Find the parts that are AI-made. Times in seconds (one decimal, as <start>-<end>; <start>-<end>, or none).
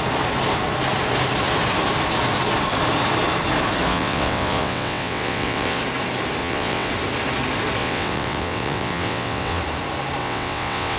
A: 3.9-5.8; 6.4-6.9; 7.8-9.6; 10.2-11.0